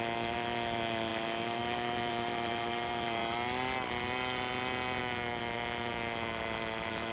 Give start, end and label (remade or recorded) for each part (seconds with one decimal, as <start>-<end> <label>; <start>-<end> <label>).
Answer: 0.0-3.2 remade; 3.2-5.0 recorded; 5.0-7.1 remade